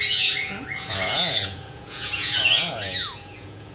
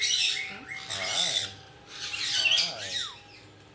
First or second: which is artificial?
first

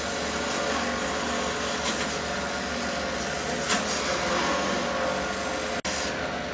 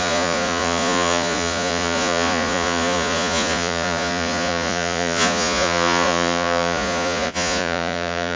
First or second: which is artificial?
second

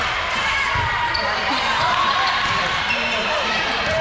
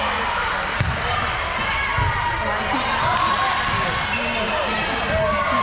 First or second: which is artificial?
first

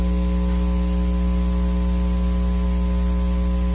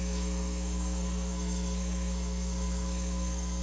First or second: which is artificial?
second